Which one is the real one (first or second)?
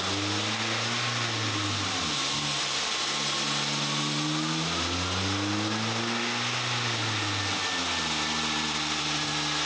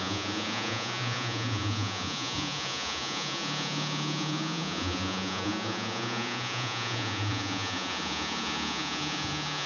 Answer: first